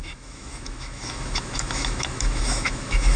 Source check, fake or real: fake